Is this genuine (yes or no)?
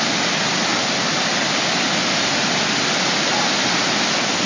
yes